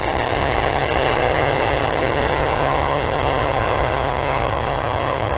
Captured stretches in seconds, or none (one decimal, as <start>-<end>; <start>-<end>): none